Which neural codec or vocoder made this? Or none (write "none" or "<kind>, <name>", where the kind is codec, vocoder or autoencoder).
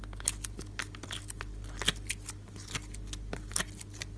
none